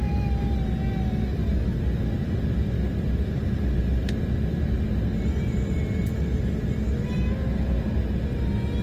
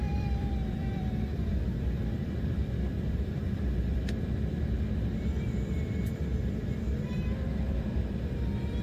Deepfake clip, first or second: second